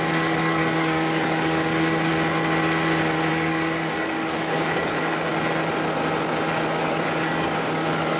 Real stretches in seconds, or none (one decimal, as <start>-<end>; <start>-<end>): 2.1-3.3; 5.3-6.8